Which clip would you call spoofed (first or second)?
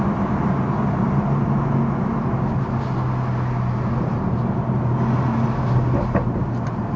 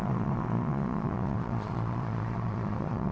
second